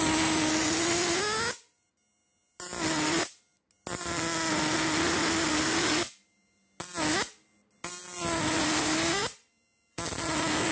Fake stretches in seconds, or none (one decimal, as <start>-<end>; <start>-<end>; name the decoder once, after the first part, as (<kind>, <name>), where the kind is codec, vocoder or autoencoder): none

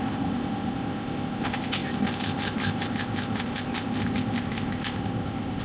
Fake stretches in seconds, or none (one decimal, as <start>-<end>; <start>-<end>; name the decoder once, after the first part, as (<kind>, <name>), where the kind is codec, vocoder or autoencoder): 0.0-5.6 (codec, ZipCodec)

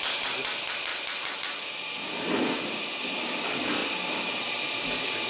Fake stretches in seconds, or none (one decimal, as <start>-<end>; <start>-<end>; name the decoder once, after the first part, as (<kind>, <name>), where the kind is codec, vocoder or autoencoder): none

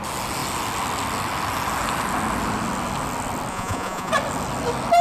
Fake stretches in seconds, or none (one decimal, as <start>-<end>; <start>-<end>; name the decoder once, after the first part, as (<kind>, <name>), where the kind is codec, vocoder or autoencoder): 3.5-4.1 (vocoder, Vocos)

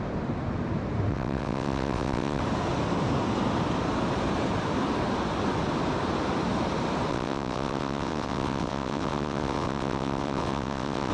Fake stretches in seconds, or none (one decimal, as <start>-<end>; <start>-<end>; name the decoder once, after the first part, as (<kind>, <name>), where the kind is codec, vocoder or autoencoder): 1.1-2.4 (vocoder, WaveNeXt); 7.1-11.1

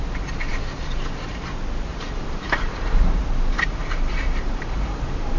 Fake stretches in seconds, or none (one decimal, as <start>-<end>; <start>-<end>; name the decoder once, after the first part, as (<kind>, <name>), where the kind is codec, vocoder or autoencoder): 1.9-5.4 (vocoder, BigVGAN v2)